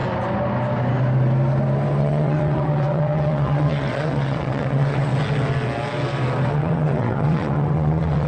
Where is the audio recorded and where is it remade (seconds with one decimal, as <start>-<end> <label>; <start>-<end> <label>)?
0.0-2.0 recorded; 2.0-5.1 remade; 5.1-6.5 recorded; 6.5-8.3 remade